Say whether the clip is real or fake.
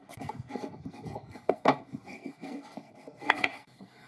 fake